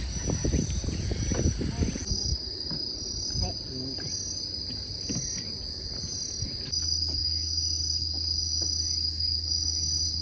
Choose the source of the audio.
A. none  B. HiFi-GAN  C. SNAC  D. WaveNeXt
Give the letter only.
A